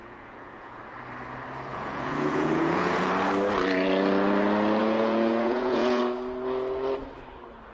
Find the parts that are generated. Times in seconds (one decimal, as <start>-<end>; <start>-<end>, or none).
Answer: 0.0-0.8; 1.7-3.1; 4.8-6.0

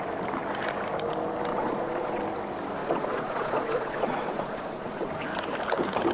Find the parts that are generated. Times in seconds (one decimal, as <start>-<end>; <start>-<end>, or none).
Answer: 1.5-2.2; 2.8-5.1

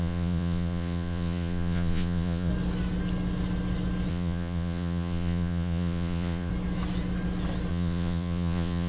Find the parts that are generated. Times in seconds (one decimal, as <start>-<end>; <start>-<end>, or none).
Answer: 0.0-2.5; 4.1-6.5; 7.7-8.9